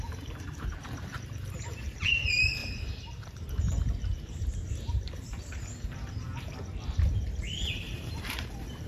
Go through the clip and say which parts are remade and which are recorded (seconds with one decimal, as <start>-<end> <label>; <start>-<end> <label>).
0.0-8.9 remade